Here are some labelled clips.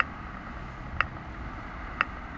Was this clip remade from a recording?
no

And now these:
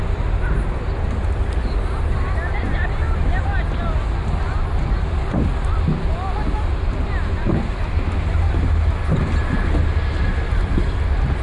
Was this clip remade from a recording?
no